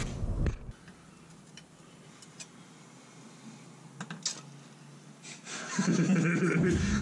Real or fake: real